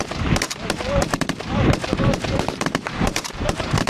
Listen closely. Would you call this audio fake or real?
fake